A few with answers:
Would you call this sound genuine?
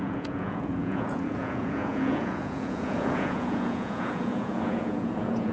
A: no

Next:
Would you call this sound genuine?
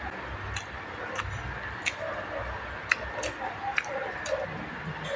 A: yes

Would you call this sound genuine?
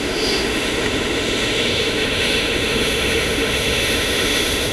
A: no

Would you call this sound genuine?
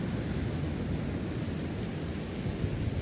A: yes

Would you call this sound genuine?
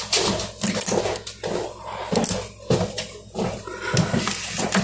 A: yes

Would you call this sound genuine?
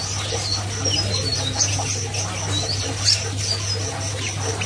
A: yes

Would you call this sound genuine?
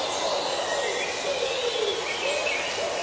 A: yes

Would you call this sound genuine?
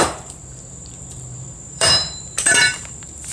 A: no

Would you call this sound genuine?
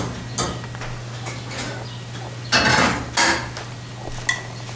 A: yes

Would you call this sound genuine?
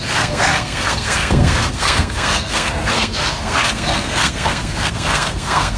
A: no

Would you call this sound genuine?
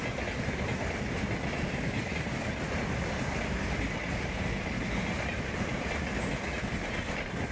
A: yes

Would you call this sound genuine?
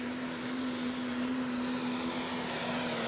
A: yes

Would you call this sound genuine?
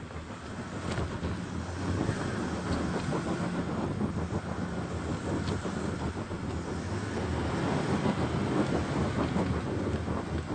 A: yes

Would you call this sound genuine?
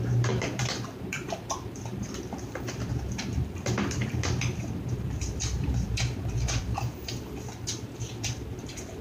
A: no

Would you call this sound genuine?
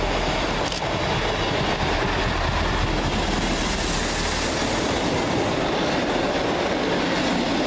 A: yes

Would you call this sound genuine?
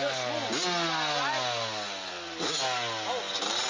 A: yes